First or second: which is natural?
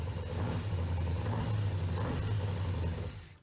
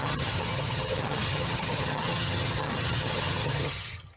first